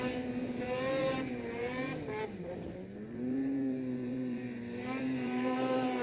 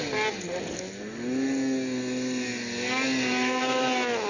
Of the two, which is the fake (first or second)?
first